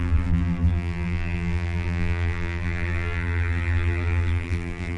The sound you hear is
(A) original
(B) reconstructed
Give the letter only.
B